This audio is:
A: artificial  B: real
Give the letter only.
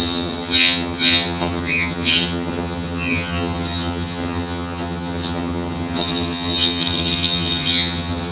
A